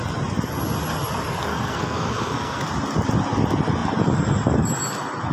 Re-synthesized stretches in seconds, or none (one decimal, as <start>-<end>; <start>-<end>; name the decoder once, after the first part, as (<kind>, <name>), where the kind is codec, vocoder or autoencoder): 1.5-2.6 (codec, SNAC)